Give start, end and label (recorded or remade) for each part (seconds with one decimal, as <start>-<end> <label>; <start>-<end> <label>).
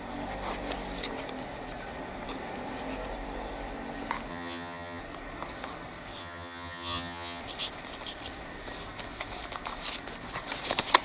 0.0-4.3 recorded; 4.3-5.0 remade; 5.0-6.2 recorded; 6.2-7.4 remade; 7.4-11.0 recorded